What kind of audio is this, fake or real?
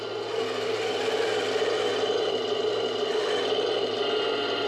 real